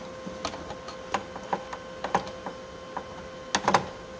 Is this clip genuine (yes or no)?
yes